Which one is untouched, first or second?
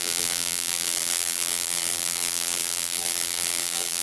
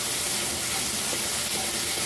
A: second